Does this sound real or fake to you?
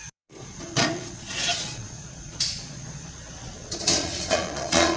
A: fake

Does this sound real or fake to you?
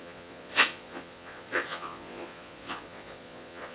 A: fake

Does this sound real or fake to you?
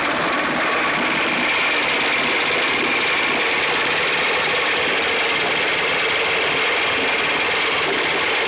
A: real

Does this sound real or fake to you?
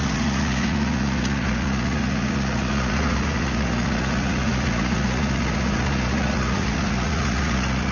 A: fake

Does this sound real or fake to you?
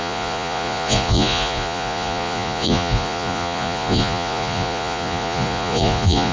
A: fake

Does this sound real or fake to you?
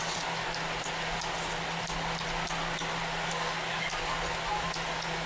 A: real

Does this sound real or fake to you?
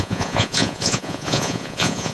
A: fake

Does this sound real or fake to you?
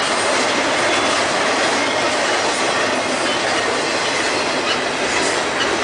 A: real